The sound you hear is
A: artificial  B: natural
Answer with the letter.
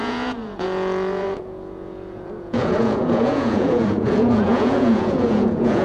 A